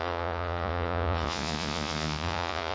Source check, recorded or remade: remade